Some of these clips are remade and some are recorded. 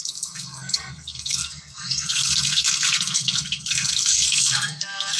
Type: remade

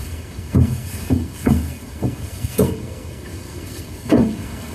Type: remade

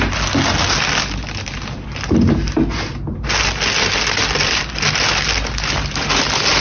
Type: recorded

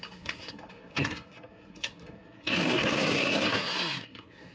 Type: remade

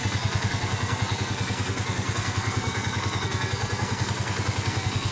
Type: remade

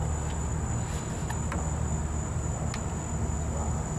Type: recorded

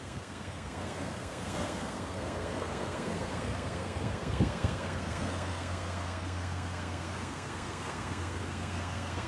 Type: remade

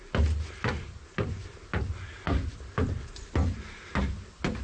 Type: recorded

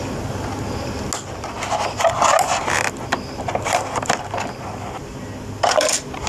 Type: recorded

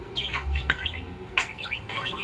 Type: remade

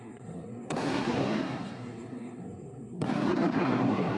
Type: remade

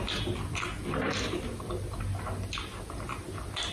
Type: recorded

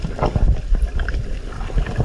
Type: recorded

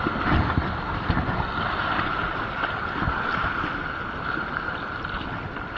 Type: recorded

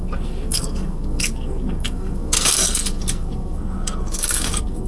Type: remade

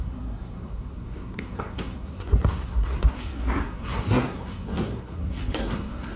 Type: remade